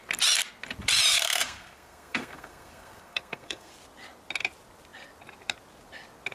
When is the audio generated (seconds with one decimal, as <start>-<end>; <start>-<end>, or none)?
1.1-3.7